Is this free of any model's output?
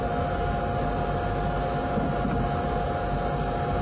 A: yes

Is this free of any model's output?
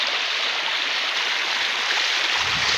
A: yes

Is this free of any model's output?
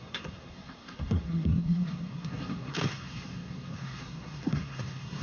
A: no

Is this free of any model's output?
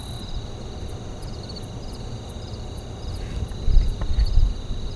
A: yes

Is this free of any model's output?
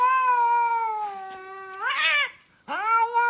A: yes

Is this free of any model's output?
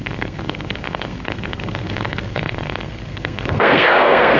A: no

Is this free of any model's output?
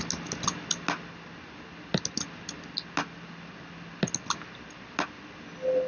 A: yes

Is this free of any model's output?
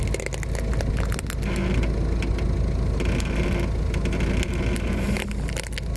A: yes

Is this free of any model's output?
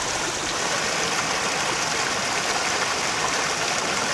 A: yes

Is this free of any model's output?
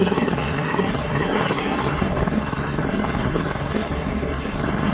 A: no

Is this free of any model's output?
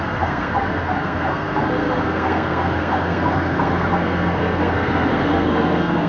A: no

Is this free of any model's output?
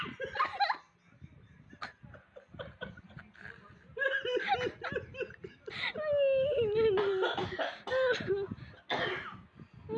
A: yes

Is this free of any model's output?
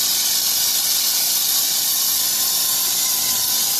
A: yes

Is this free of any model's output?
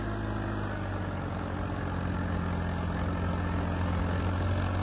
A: yes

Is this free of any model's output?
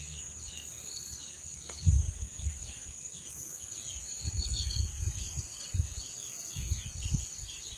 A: no